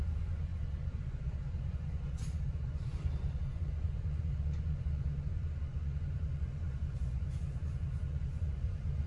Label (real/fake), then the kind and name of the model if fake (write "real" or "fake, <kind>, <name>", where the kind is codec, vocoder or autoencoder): fake, vocoder, Vocos